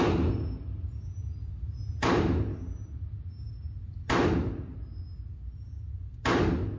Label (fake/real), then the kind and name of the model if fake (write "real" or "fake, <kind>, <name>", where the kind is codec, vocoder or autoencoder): real